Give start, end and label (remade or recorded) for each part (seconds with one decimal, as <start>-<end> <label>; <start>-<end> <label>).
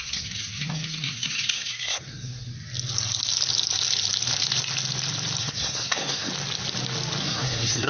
0.0-2.5 remade; 2.5-5.4 recorded; 5.4-6.3 remade; 6.3-7.2 recorded; 7.2-7.9 remade